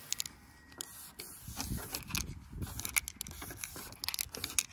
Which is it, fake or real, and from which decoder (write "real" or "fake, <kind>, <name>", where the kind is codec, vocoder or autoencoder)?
real